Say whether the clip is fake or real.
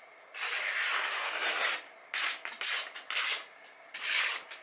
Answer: real